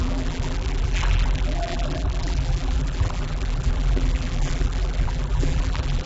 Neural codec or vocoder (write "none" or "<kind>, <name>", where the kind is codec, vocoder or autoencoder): vocoder, BigVGAN v2